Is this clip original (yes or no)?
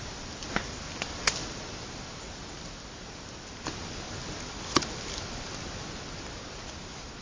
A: yes